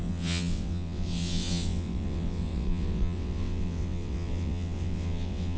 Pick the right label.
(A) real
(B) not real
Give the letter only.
B